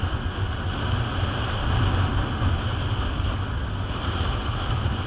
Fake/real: real